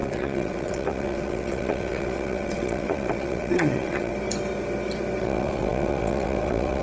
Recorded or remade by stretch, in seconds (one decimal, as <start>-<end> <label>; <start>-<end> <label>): 0.0-4.1 remade; 4.1-5.2 recorded; 5.2-6.8 remade

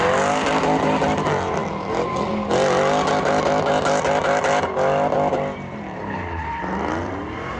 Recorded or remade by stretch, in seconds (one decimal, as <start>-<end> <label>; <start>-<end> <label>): 0.0-7.6 recorded

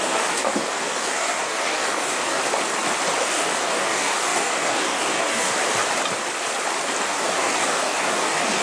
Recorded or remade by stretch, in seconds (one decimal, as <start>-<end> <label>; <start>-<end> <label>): 0.0-2.4 remade; 2.4-3.2 recorded; 3.2-5.5 remade; 5.5-7.0 recorded; 7.0-8.6 remade

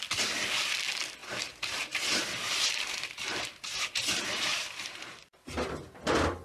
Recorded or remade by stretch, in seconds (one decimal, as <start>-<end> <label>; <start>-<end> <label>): 0.0-1.2 recorded; 1.2-5.0 remade; 5.0-6.4 recorded

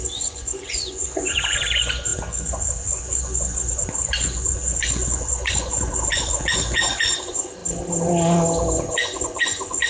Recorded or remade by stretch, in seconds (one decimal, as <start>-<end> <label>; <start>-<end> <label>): 0.0-7.6 remade; 7.6-8.9 recorded; 8.9-9.9 remade

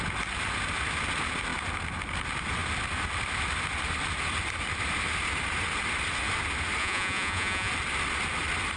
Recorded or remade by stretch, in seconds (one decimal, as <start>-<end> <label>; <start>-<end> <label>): 0.0-6.8 recorded; 6.8-7.7 remade; 7.7-8.8 recorded

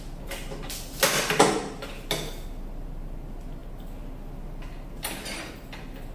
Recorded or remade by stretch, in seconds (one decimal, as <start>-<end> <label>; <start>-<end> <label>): 0.0-6.1 recorded

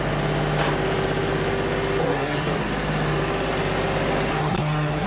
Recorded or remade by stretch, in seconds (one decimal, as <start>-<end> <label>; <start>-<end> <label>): 0.0-2.0 recorded; 2.0-2.6 remade; 2.6-4.3 recorded; 4.3-5.1 remade